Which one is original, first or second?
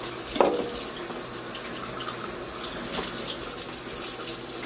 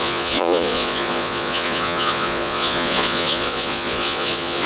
first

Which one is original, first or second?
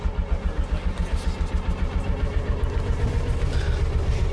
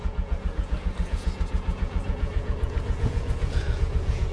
first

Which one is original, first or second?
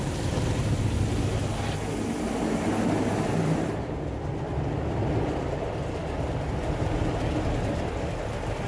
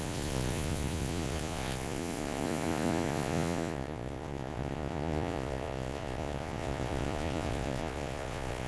first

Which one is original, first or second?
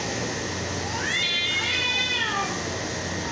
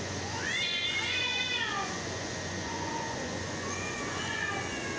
first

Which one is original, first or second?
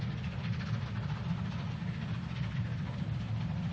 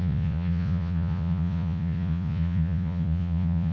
first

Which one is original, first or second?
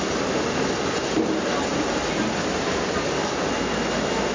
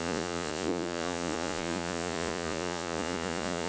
first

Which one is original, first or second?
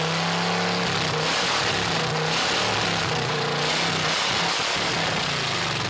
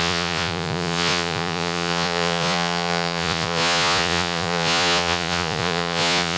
first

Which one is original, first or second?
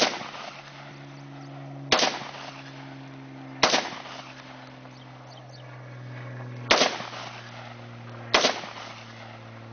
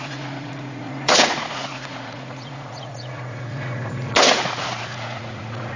first